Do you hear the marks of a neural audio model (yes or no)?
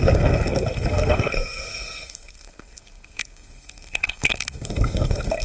yes